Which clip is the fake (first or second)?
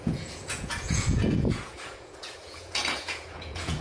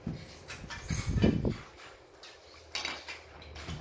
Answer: first